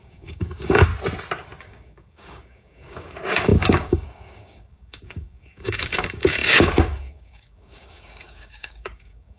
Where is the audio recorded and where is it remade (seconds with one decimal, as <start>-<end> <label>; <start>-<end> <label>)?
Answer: 0.0-0.9 remade; 0.9-1.6 recorded; 1.6-9.4 remade